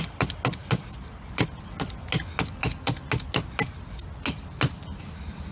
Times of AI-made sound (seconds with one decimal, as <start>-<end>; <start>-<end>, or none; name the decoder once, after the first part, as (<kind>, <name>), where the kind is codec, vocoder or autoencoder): none